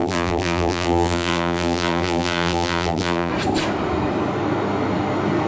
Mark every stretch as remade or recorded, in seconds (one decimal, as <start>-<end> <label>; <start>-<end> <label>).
0.0-3.3 remade; 3.3-5.5 recorded